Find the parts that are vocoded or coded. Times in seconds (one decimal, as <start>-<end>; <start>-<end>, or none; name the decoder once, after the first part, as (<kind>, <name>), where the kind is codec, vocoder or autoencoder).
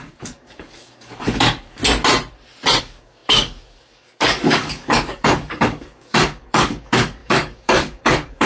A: 0.0-1.8 (codec, DAC); 2.8-8.5